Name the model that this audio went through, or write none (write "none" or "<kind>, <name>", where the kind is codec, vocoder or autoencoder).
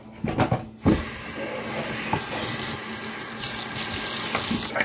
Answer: none